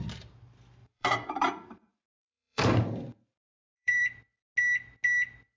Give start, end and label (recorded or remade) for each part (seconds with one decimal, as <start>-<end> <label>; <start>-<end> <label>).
0.0-0.8 recorded; 0.8-4.2 remade; 4.2-5.6 recorded